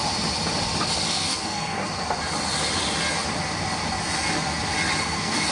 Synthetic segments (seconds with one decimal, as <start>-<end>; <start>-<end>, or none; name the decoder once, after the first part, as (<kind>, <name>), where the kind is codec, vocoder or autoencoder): 1.1-1.8 (codec, SNAC); 5.0-5.5